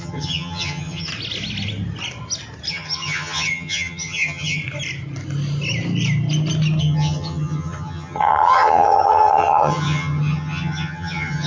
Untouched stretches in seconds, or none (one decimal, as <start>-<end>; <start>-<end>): 1.1-2.7; 4.6-6.8